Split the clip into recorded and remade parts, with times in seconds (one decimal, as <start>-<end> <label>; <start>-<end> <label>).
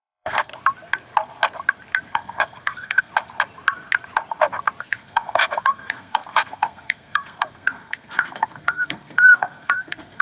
0.0-0.5 remade; 0.5-2.1 recorded; 2.1-3.1 remade; 3.1-4.8 recorded; 4.8-10.2 remade